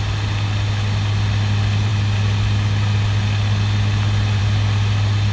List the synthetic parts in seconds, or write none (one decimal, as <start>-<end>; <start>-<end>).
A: none